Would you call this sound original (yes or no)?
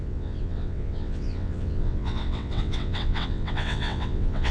no